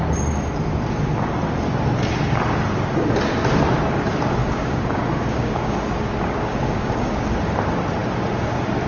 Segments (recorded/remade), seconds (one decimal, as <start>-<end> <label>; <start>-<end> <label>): 0.0-4.4 recorded; 4.4-7.1 remade; 7.1-8.9 recorded